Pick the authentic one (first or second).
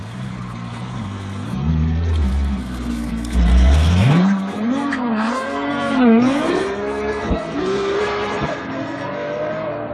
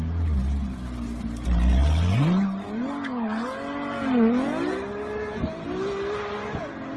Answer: second